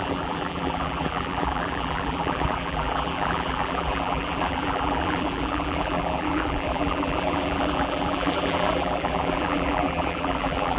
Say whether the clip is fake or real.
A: fake